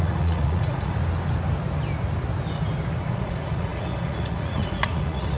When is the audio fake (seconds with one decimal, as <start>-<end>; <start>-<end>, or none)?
0.0-1.0; 3.0-5.4